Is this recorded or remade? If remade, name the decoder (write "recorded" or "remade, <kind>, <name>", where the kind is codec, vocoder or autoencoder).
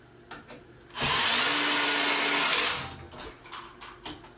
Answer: recorded